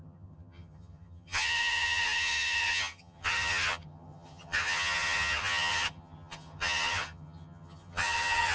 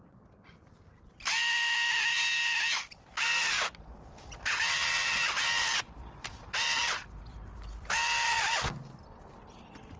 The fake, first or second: first